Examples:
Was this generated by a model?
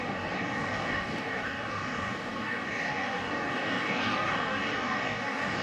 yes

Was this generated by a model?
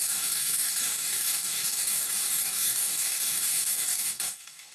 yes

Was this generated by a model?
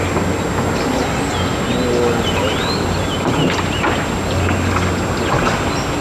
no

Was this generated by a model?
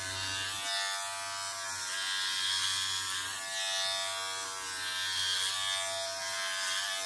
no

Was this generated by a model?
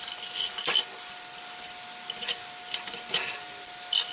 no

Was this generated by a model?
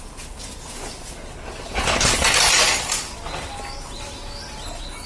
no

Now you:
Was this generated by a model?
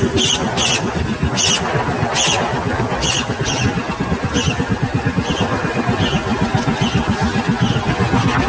no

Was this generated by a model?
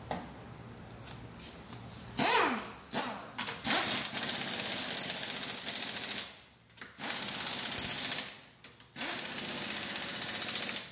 no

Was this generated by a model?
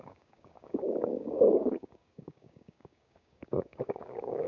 yes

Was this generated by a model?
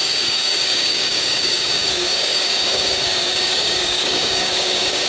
yes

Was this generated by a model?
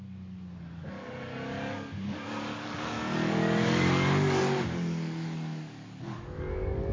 yes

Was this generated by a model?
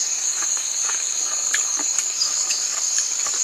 yes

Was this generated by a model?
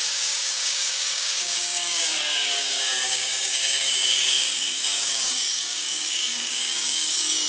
yes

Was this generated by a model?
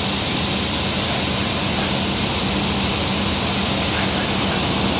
no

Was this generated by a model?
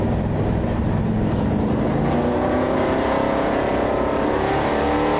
no